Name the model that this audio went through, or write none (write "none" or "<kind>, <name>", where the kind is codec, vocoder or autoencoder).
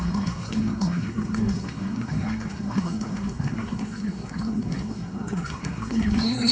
codec, SNAC